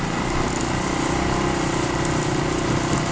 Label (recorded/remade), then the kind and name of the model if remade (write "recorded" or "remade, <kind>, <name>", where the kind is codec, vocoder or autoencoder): recorded